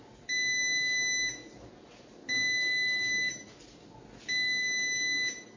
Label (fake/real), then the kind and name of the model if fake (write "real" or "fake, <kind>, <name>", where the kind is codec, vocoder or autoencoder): real